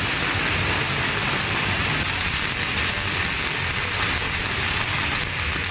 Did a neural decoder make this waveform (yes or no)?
no